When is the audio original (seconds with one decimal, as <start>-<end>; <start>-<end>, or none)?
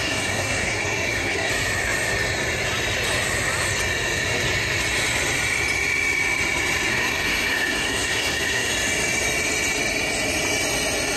1.5-6.9; 8.7-11.2